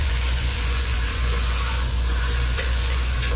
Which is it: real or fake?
fake